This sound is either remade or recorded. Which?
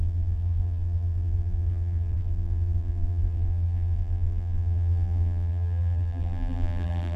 remade